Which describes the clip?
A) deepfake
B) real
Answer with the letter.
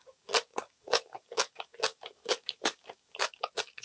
A